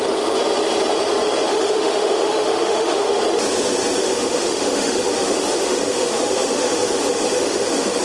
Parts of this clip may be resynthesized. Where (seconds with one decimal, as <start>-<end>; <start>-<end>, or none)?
1.5-3.1; 4.0-8.0